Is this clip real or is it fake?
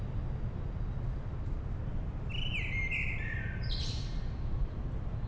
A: real